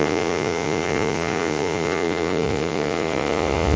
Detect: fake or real fake